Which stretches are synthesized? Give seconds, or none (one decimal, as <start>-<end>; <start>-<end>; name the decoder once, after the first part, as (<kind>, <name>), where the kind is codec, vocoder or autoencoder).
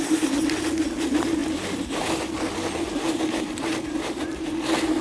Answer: 1.4-4.4 (vocoder, BigVGAN v2)